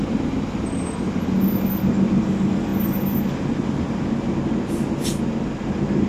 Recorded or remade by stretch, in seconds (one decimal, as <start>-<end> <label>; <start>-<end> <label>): 0.0-6.1 recorded